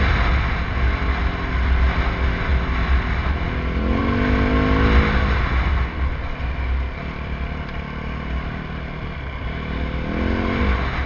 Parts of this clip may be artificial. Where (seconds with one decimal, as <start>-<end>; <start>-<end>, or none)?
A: none